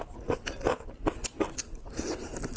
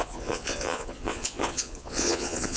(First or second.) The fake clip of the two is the second